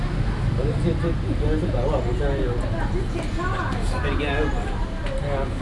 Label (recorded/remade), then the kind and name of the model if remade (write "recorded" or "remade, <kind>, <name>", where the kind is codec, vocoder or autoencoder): recorded